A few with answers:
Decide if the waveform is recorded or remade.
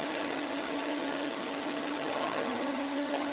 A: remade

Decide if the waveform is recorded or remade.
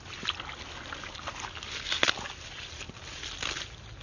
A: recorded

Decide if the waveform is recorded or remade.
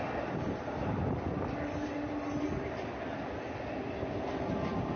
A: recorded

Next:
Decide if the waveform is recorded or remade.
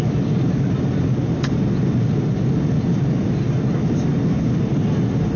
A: recorded